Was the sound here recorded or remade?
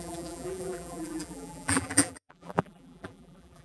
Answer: remade